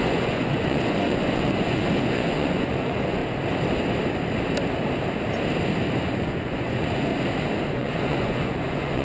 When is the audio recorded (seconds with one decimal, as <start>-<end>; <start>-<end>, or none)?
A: 3.2-6.0; 7.1-7.7